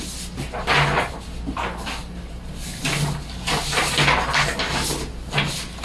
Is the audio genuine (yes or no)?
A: yes